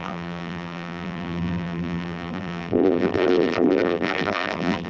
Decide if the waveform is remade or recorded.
remade